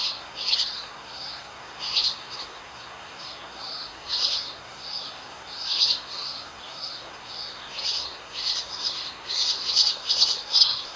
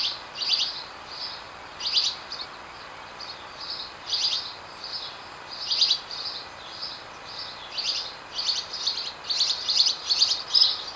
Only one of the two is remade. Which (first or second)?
first